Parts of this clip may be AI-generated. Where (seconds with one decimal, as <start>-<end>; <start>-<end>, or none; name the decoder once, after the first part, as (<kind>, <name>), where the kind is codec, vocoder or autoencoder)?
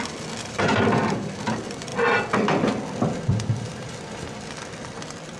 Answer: 0.0-1.9 (vocoder, BigVGAN v2); 3.2-5.4